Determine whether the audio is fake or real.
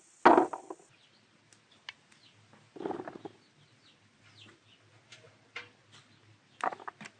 real